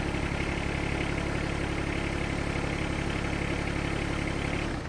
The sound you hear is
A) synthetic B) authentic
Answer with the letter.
B